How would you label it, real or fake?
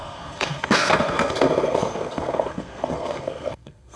fake